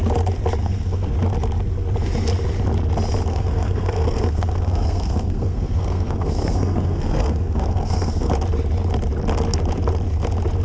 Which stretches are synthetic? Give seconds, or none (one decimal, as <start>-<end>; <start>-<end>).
0.6-1.1; 3.3-8.3